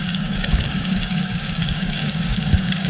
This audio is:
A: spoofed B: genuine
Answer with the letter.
A